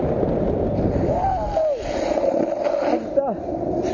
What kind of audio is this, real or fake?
real